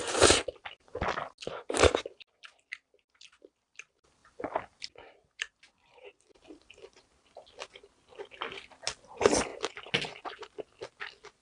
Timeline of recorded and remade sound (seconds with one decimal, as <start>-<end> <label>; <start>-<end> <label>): 0.0-11.4 recorded